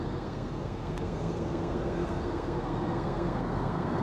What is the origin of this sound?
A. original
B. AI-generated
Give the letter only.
B